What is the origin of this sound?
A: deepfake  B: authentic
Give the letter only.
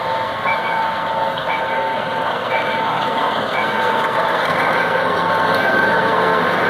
A